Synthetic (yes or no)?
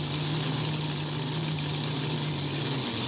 no